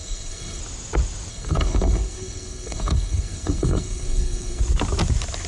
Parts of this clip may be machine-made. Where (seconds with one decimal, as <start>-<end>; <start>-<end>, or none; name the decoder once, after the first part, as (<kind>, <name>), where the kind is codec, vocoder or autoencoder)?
0.0-0.6 (codec, SNAC); 1.3-4.6